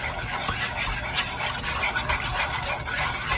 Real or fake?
real